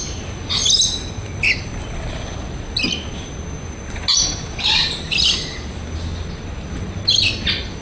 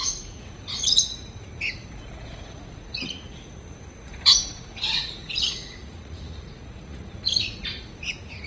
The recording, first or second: first